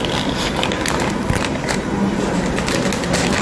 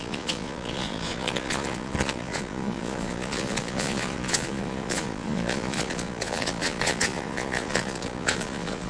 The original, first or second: first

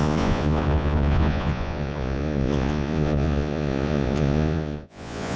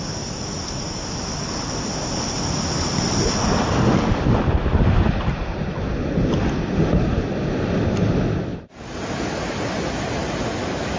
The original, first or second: second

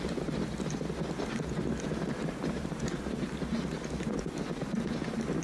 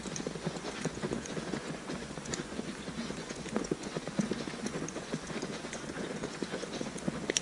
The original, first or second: first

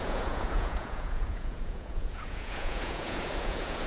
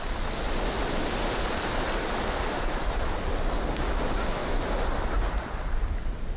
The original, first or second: second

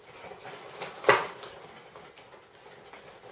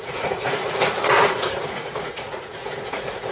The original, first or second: first